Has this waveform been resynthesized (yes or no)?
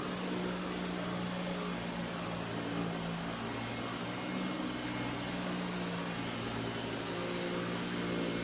no